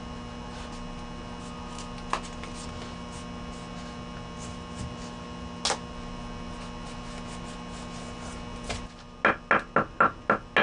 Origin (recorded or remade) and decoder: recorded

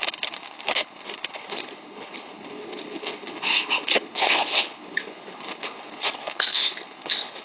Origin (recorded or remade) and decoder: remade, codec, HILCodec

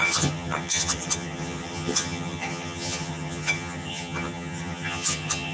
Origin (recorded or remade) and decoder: remade, vocoder, HiFi-GAN